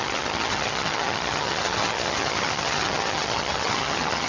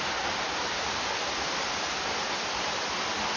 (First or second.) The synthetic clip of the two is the first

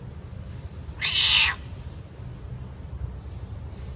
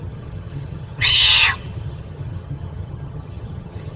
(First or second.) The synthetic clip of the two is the second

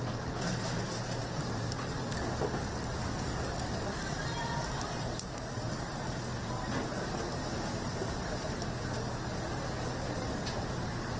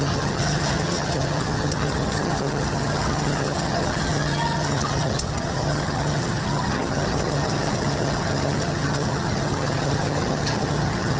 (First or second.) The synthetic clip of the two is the second